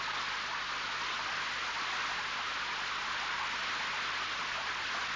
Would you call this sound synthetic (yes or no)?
no